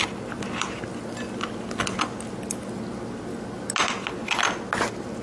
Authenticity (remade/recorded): recorded